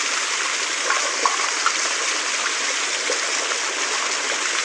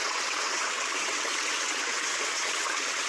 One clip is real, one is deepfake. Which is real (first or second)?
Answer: first